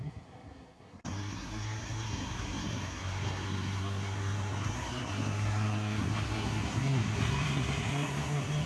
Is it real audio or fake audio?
fake